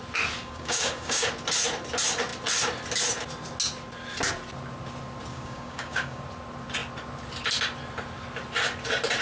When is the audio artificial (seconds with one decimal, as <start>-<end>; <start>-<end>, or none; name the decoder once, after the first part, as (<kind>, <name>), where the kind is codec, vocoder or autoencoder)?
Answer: 0.4-1.3 (codec, DAC); 5.3-6.2